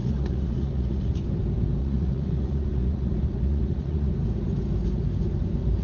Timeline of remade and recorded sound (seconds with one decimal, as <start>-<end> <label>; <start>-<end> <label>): 0.0-1.2 remade; 1.2-1.8 recorded; 1.8-4.1 remade; 4.1-5.8 recorded